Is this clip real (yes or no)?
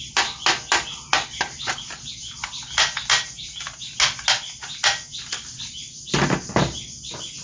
yes